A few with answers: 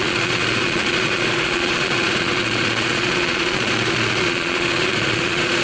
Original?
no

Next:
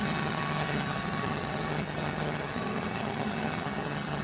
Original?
no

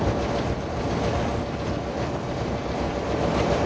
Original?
yes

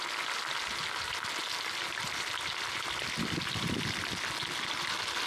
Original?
yes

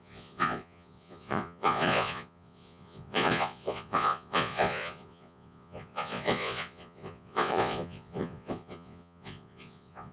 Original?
no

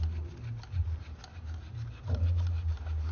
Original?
yes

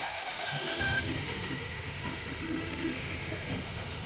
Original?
no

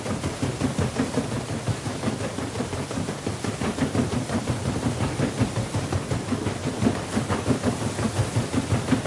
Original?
no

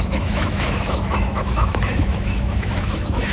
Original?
no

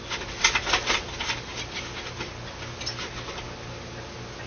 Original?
yes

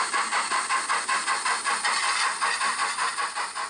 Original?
yes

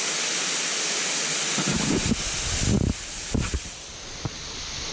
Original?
yes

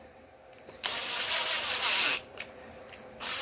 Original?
no